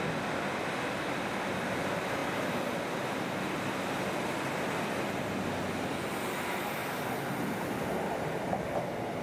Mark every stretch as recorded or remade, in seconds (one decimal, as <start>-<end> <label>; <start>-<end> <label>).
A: 0.0-9.2 recorded